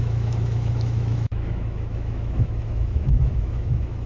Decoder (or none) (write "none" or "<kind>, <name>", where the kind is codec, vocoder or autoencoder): autoencoder, DAC-VAE